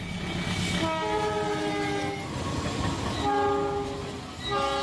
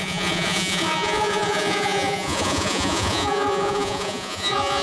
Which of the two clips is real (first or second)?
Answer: first